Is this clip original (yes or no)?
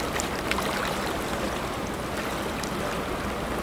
yes